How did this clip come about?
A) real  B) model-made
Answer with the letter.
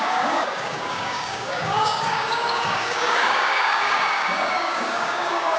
B